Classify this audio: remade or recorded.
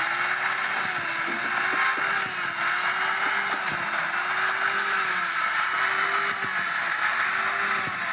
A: recorded